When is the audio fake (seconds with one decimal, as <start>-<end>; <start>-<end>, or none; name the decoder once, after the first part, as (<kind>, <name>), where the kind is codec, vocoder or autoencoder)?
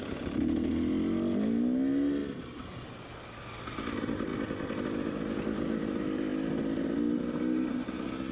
none